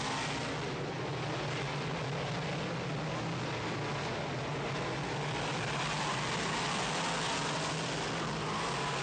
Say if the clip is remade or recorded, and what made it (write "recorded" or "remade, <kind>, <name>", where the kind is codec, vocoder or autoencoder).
recorded